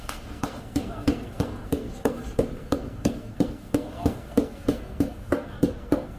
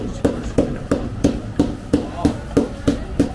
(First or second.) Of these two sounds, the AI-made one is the first